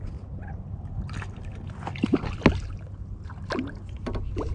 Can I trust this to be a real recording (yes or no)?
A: yes